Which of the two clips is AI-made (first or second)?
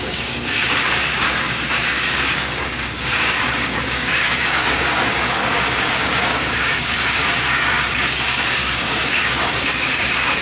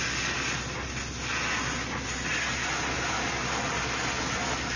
first